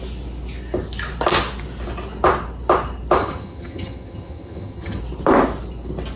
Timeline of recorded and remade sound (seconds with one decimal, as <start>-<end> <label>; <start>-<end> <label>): 0.0-3.2 recorded; 3.2-5.0 remade; 5.0-6.2 recorded